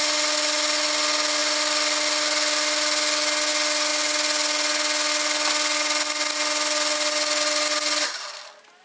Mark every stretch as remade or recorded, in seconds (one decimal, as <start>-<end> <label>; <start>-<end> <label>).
0.0-8.8 recorded